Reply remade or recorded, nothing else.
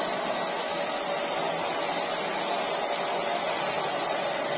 recorded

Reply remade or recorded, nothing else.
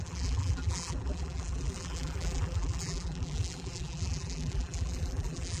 remade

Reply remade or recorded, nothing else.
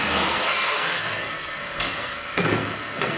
remade